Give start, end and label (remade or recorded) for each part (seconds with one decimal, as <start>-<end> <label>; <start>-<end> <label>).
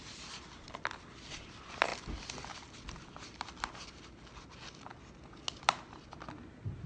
0.0-6.9 recorded